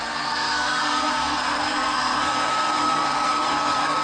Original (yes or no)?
no